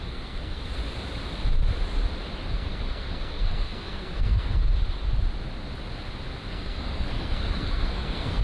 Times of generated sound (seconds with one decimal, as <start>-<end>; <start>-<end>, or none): 0.0-0.8; 2.5-4.6; 6.5-8.4